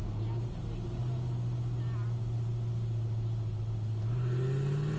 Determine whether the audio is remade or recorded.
recorded